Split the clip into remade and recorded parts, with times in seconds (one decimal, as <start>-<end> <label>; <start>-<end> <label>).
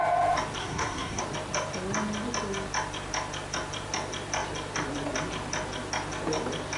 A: 0.0-0.6 recorded; 0.6-1.2 remade; 1.2-6.8 recorded